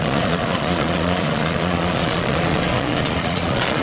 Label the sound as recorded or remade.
remade